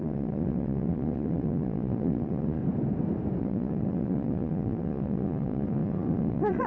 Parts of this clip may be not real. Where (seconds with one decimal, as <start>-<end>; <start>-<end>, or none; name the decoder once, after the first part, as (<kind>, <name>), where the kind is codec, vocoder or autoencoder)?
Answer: 0.0-2.6 (vocoder, Vocos); 3.4-6.7